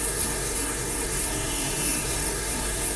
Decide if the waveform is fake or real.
fake